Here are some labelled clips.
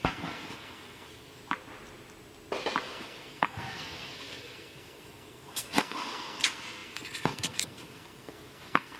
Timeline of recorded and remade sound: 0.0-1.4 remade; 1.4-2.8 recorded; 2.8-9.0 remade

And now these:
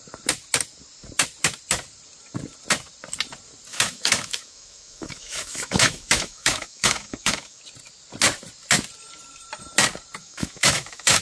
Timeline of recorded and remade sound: 0.0-3.7 recorded; 3.7-7.6 remade; 7.6-10.2 recorded; 10.2-11.2 remade

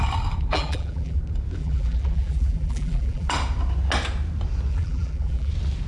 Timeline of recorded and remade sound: 0.0-0.5 recorded; 0.5-1.2 remade; 1.2-1.6 recorded; 1.6-3.3 remade; 3.3-4.7 recorded; 4.7-5.5 remade; 5.5-5.9 recorded

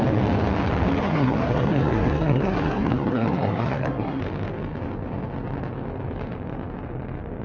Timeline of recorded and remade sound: 0.0-1.0 recorded; 1.0-4.2 remade; 4.2-7.4 recorded

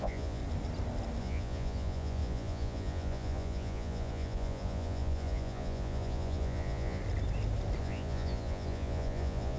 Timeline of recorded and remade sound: 0.0-0.4 remade; 0.4-1.2 recorded; 1.2-7.0 remade; 7.0-7.8 recorded; 7.8-9.6 remade